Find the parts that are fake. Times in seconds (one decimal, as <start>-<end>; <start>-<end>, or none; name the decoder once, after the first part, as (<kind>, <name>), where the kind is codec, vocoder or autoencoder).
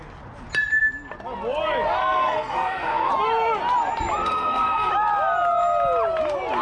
2.0-3.1 (codec, SNAC); 4.2-4.9